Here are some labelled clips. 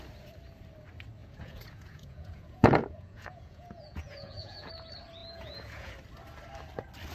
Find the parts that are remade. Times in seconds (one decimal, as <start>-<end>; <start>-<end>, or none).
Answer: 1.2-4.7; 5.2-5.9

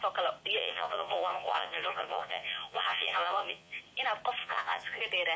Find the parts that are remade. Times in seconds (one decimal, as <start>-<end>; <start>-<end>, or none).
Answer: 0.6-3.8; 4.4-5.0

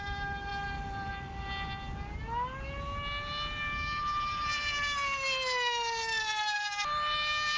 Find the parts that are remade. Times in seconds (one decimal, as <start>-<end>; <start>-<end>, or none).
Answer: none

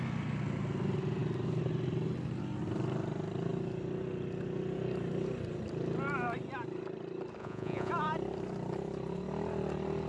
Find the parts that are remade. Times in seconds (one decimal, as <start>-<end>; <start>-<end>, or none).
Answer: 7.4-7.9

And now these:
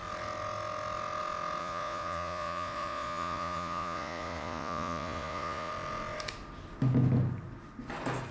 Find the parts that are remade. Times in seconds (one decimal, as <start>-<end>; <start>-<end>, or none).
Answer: 1.6-5.7